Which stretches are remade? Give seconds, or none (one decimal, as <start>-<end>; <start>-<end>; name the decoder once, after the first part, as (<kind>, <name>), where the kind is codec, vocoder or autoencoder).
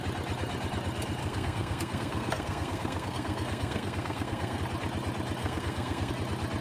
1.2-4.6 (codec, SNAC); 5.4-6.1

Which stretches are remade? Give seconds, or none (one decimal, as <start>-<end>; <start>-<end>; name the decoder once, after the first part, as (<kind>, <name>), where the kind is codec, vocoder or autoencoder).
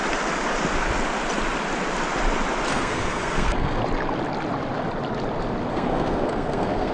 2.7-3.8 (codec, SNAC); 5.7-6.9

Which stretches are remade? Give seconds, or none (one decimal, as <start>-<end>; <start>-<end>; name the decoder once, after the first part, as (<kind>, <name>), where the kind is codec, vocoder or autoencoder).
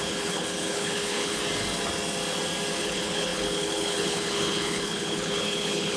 0.0-1.4 (codec, HILCodec); 2.8-6.0